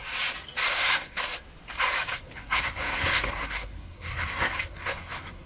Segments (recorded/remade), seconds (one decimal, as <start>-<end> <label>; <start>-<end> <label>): 0.0-0.6 recorded; 0.6-1.2 remade; 1.2-2.1 recorded; 2.1-5.5 remade